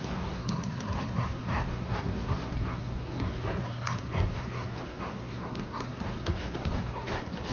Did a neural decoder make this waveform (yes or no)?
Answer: yes